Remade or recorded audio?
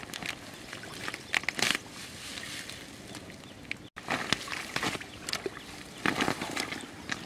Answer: recorded